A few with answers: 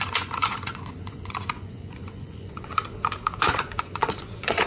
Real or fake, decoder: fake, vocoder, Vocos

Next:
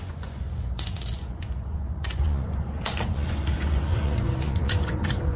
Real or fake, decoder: fake, vocoder, Vocos